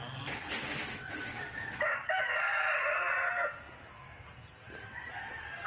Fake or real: real